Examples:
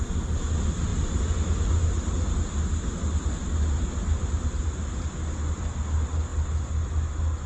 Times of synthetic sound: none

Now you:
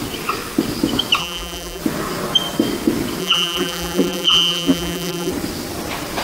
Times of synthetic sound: 1.2-1.8 (vocoder, BigVGAN v2); 3.2-5.3